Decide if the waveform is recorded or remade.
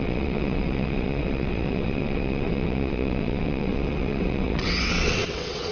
remade